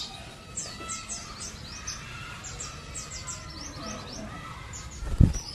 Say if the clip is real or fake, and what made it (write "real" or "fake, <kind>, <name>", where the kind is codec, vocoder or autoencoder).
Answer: real